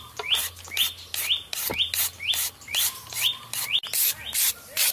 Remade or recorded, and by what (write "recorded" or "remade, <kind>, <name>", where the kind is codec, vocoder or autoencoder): recorded